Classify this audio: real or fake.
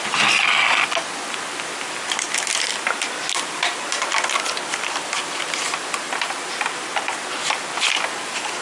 real